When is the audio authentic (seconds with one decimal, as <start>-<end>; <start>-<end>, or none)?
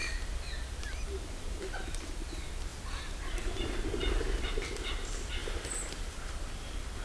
2.7-3.3; 5.4-6.0